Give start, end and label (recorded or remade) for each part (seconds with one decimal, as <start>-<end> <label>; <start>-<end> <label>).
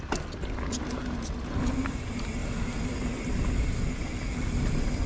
0.0-5.1 recorded